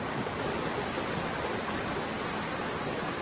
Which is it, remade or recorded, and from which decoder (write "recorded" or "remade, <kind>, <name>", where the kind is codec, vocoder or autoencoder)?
recorded